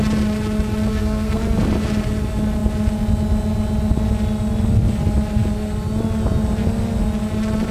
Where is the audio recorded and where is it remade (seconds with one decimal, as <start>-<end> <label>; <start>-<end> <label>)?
0.0-0.9 recorded; 0.9-1.4 remade; 1.4-7.7 recorded